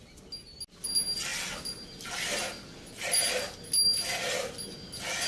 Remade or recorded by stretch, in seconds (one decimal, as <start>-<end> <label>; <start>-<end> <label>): 0.0-5.3 recorded

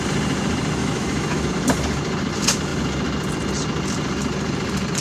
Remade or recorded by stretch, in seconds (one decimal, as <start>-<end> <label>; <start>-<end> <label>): 0.0-0.8 recorded; 0.8-1.5 remade; 1.5-5.0 recorded

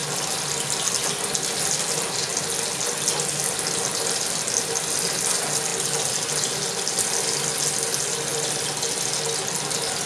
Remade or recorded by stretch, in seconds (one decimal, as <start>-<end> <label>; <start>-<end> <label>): 0.0-10.1 recorded

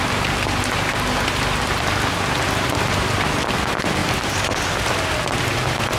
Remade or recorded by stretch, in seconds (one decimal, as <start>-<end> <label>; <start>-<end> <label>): 0.0-6.0 recorded

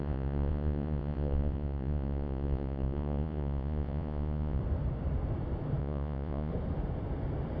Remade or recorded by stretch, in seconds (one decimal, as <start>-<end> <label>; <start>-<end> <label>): 0.0-4.6 remade; 4.6-5.8 recorded; 5.8-6.5 remade; 6.5-7.6 recorded